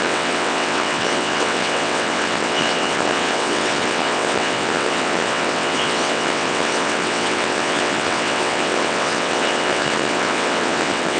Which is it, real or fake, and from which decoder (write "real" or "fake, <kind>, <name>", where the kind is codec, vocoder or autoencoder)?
fake, vocoder, WaveNeXt